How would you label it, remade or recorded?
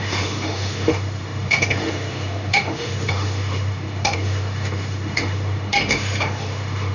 remade